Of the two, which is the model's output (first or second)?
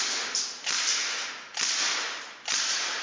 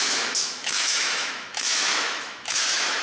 second